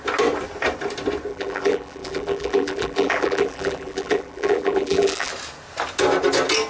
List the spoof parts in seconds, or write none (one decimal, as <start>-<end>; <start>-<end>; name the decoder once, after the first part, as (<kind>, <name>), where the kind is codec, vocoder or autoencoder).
1.3-5.3 (vocoder, BigVGAN v2)